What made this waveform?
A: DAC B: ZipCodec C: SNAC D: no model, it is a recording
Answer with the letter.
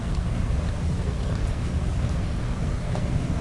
C